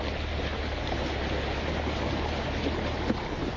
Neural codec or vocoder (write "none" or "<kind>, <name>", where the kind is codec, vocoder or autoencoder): none